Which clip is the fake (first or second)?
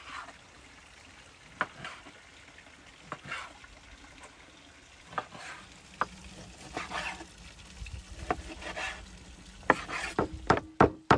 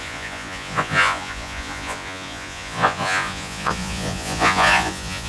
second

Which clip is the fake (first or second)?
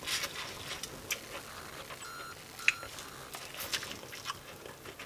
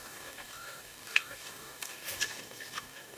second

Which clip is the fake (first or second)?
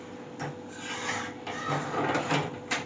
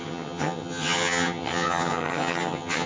second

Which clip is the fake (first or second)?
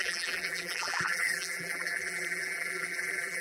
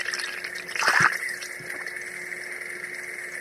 first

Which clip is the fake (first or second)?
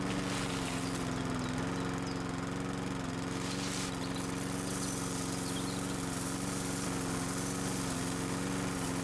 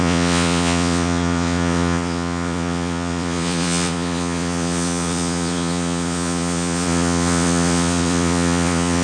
second